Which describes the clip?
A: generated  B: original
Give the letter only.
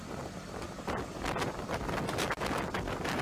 A